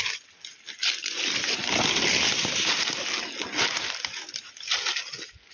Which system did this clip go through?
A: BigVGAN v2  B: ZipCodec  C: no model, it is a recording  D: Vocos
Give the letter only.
C